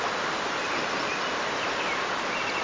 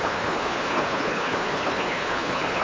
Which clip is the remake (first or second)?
second